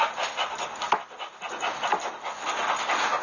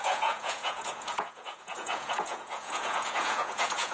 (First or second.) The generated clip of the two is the second